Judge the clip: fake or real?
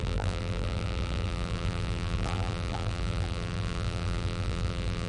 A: fake